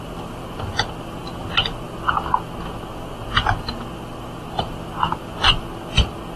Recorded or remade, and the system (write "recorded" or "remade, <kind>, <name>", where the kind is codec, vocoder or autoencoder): recorded